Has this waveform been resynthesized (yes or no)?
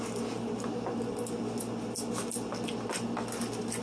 no